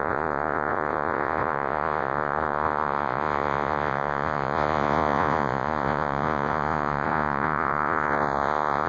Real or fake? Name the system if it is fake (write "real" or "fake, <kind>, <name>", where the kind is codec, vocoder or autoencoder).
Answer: fake, vocoder, Vocos